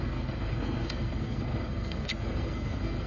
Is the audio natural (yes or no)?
no